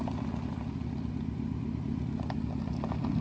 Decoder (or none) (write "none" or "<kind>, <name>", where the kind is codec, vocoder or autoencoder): none